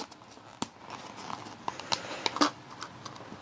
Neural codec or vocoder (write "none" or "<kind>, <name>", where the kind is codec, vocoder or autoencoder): none